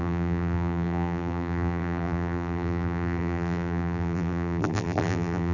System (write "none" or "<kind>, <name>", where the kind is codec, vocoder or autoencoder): vocoder, BigVGAN v2